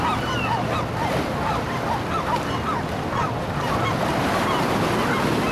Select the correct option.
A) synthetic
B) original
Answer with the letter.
B